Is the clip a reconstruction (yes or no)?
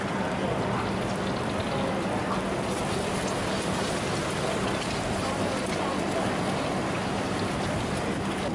no